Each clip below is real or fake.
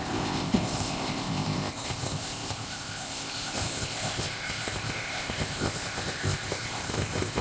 fake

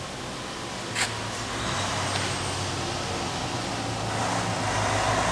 real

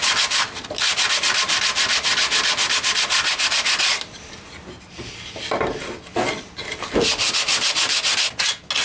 real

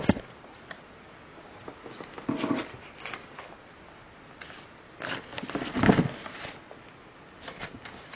real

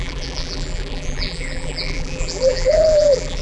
fake